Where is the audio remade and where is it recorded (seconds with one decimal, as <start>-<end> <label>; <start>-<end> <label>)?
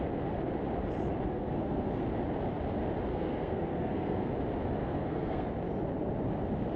0.0-1.3 recorded; 1.3-2.0 remade; 2.0-3.1 recorded; 3.1-4.3 remade; 4.3-4.8 recorded; 4.8-5.5 remade; 5.5-6.8 recorded